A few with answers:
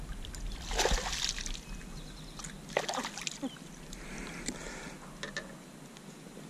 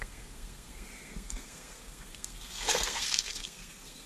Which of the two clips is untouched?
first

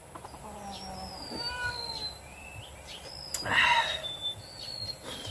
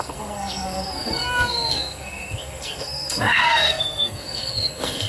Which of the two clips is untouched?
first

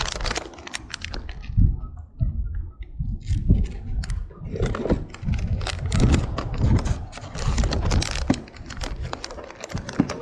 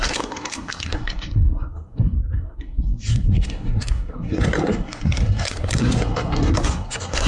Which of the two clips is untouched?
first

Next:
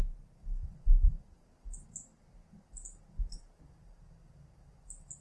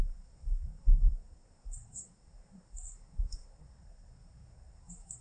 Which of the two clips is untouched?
first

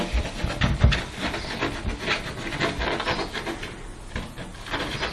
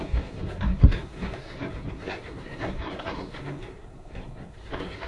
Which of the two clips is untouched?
first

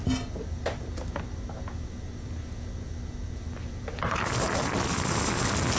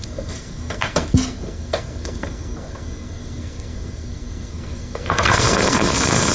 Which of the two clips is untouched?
first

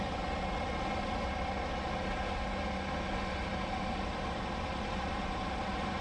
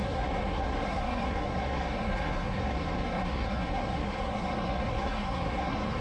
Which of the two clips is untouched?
first